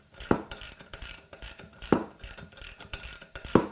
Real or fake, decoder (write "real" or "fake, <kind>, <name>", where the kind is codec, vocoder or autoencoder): fake, vocoder, BigVGAN v2